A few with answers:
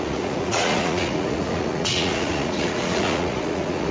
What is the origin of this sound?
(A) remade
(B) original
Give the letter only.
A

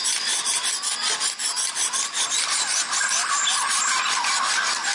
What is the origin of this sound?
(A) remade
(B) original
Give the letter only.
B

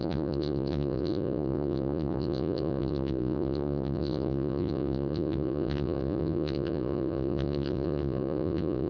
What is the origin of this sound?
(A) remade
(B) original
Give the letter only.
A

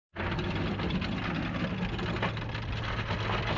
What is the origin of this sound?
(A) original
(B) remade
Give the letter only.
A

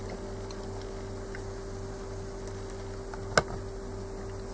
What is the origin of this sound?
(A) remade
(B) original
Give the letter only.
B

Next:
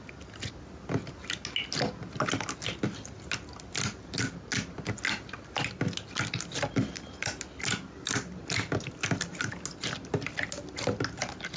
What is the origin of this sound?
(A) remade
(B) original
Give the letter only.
B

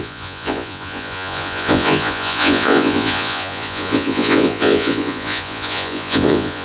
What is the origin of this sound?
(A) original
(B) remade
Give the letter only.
B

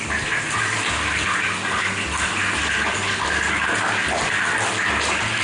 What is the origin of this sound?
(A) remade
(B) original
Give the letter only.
B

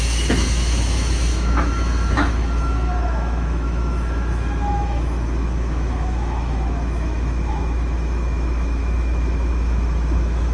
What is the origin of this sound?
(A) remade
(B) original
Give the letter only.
A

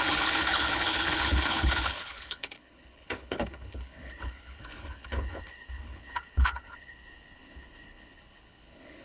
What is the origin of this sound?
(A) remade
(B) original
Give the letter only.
A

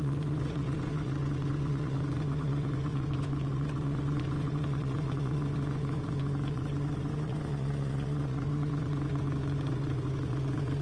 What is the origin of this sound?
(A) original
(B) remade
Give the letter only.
B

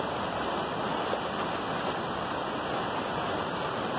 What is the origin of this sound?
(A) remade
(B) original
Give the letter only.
B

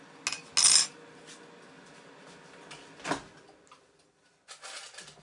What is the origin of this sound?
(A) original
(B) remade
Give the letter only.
A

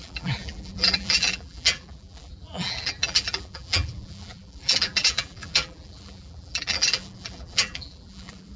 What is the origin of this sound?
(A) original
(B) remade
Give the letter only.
B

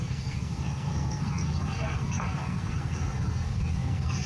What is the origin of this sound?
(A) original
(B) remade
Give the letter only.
B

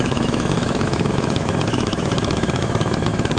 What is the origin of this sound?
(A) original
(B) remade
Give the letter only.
B